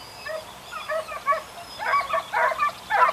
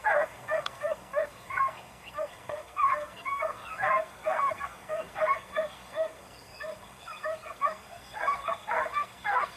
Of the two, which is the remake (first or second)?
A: second